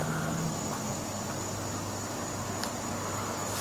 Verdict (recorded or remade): recorded